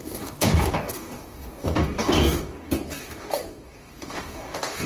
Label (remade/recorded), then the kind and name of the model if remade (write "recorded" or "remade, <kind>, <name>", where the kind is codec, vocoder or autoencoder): remade, codec, DAC